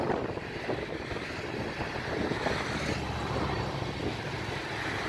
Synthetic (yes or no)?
no